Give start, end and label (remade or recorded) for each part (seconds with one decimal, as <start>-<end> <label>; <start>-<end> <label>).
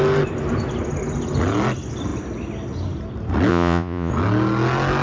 0.0-3.5 recorded; 3.5-4.1 remade; 4.1-5.0 recorded